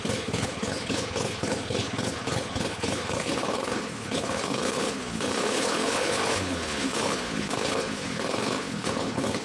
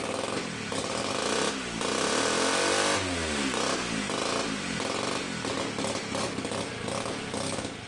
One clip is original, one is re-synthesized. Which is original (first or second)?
second